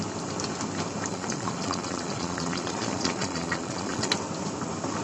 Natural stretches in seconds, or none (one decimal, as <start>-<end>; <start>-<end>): 0.0-1.1; 4.1-5.0

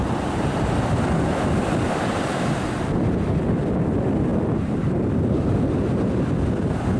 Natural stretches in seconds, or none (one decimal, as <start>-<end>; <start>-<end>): 4.3-5.9